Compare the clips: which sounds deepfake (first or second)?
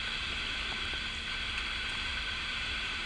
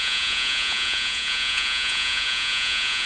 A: second